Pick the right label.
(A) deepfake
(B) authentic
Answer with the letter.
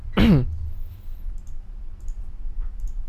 B